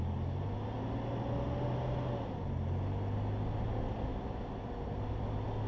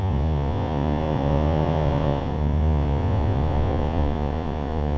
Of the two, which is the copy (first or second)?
second